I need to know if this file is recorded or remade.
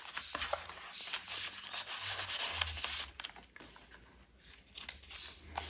recorded